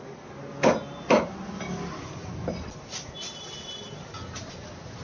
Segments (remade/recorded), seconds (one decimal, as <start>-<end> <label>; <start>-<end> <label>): 0.0-5.0 recorded

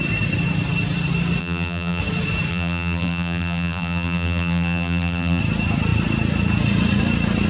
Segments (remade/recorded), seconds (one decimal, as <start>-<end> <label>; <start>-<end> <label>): 0.0-1.4 recorded; 1.4-2.0 remade; 2.0-2.5 recorded; 2.5-5.4 remade; 5.4-7.5 recorded

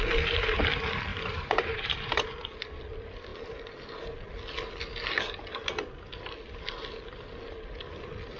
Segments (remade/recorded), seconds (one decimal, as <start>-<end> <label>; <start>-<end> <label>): 0.0-1.1 recorded; 1.1-2.3 remade; 2.3-8.4 recorded

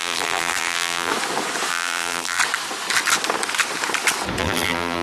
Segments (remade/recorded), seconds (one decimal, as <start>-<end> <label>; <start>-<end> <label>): 0.0-1.1 remade; 1.1-1.7 recorded; 1.7-2.4 remade; 2.4-4.4 recorded; 4.4-5.0 remade

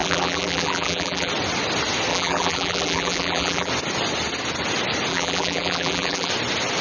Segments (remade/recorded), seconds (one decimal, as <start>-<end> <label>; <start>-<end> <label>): 0.0-1.3 remade; 1.3-2.1 recorded; 2.1-3.7 remade; 3.7-5.1 recorded; 5.1-6.3 remade; 6.3-6.8 recorded

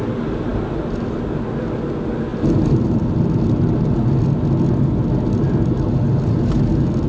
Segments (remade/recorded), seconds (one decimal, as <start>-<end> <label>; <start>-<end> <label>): 0.0-7.1 recorded